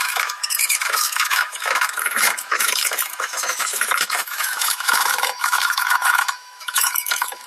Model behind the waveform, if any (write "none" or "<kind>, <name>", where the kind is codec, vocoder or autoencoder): autoencoder, DAC-VAE